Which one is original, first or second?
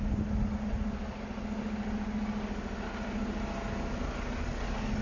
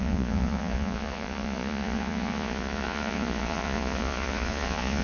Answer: first